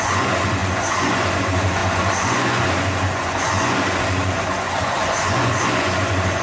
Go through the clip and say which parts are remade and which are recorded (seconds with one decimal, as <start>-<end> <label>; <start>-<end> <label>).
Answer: 0.0-6.4 remade